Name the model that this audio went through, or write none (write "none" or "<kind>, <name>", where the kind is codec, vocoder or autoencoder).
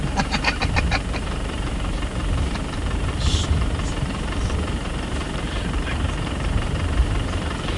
vocoder, BigVGAN v2